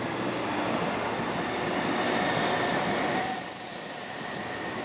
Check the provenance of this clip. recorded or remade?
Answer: recorded